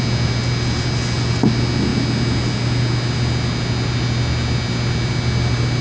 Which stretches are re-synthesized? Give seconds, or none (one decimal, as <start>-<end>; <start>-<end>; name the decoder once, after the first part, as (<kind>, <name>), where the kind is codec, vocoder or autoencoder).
none